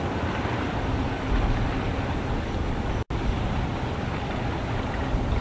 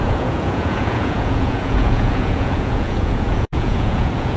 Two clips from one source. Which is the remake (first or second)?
second